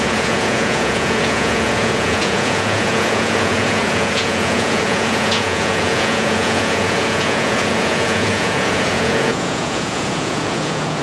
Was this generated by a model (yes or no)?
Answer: yes